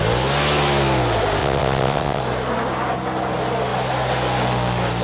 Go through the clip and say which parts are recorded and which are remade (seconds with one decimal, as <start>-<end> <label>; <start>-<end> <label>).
0.0-1.4 recorded; 1.4-2.2 remade; 2.2-5.0 recorded